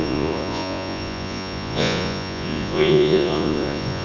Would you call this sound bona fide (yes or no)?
no